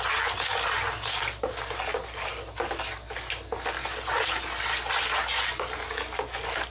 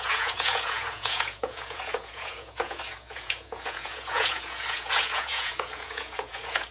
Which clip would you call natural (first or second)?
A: first